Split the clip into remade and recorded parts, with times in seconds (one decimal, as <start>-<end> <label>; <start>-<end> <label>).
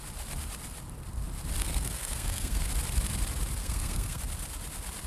0.0-1.6 recorded; 1.6-2.7 remade; 2.7-3.6 recorded; 3.6-4.2 remade; 4.2-5.1 recorded